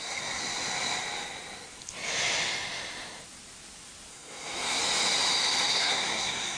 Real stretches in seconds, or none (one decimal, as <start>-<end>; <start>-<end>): 0.4-4.1; 4.8-5.7